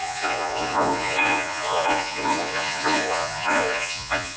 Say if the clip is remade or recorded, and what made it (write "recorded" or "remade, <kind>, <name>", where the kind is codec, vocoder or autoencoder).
remade, vocoder, Vocos